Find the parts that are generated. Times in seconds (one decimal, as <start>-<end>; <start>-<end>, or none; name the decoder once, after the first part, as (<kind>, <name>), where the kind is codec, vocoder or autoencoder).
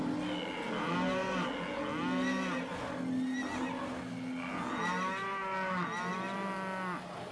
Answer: none